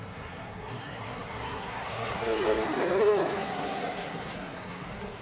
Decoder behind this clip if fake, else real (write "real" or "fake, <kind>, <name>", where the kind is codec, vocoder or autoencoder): fake, codec, SNAC